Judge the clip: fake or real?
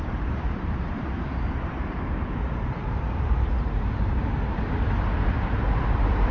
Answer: fake